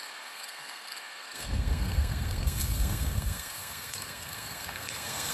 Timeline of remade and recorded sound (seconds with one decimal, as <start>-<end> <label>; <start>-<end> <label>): 0.0-5.3 remade